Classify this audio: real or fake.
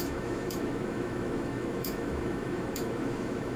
fake